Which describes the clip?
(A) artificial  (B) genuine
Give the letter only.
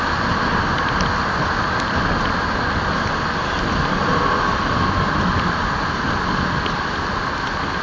B